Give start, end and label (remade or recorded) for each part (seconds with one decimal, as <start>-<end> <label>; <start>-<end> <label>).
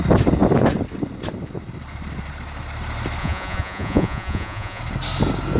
0.0-3.2 recorded; 3.2-4.8 remade; 4.8-5.6 recorded